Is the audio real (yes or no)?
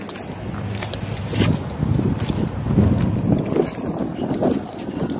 yes